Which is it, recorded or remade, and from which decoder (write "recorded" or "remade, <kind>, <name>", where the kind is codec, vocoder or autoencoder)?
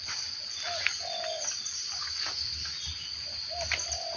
recorded